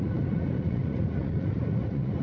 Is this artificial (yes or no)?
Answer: yes